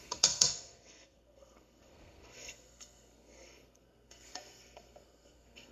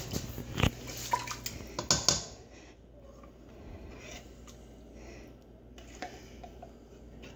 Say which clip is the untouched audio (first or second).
second